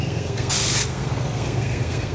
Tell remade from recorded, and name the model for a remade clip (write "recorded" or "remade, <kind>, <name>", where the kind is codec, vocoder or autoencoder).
remade, codec, SNAC